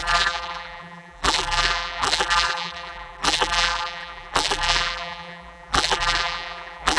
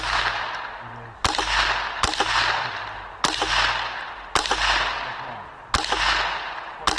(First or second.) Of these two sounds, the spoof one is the first